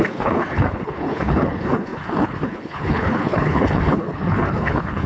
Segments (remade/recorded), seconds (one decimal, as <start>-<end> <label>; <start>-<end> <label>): 0.0-5.1 remade

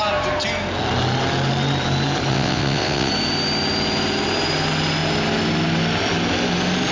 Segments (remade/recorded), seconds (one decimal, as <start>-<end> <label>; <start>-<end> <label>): 0.0-2.3 recorded; 2.3-3.1 remade; 3.1-6.9 recorded

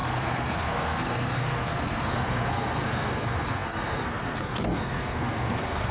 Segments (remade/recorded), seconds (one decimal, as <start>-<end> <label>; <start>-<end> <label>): 0.0-5.9 remade

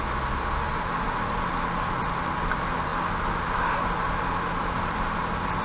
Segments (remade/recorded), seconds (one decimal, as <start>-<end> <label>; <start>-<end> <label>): 0.0-5.6 recorded

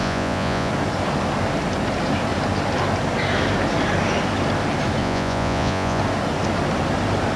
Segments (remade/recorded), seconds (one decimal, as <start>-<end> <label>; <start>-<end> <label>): 0.0-0.7 remade; 0.7-5.0 recorded; 5.0-6.0 remade; 6.0-7.4 recorded

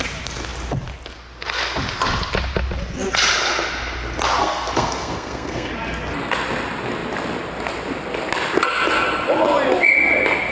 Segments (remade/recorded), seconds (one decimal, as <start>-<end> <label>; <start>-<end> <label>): 0.0-4.4 recorded; 4.4-5.7 remade; 5.7-10.5 recorded